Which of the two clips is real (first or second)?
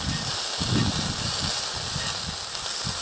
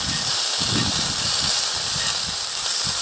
first